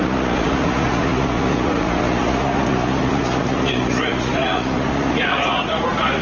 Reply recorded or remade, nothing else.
remade